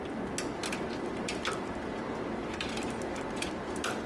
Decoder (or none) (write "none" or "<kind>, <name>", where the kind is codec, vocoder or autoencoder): none